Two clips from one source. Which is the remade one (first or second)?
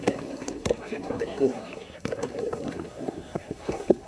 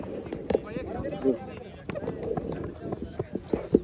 first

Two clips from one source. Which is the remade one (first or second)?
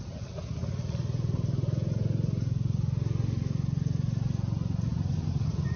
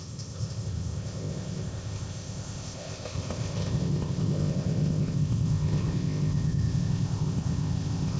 second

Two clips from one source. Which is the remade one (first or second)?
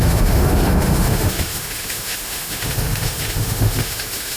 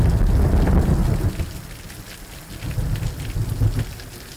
first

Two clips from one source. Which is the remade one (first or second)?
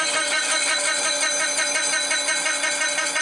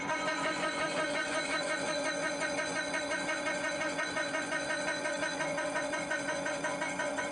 second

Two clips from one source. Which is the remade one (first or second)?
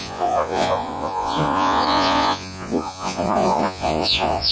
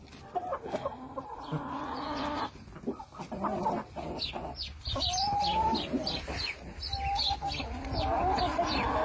first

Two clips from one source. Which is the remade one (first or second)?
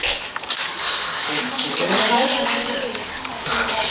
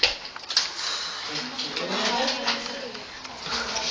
first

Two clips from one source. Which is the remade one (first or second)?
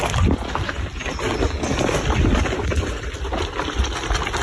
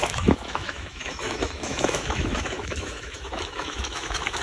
second